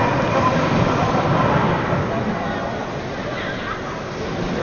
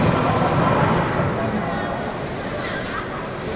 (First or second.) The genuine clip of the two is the second